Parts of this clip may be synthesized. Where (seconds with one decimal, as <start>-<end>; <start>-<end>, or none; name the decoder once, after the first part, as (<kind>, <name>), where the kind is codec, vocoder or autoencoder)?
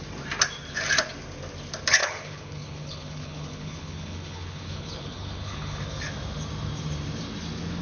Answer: 2.0-5.8 (codec, HILCodec)